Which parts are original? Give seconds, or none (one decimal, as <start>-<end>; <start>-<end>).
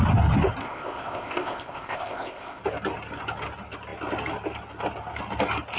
0.0-0.6; 2.6-5.8